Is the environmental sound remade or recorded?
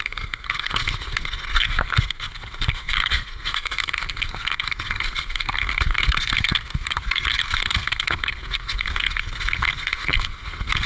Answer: remade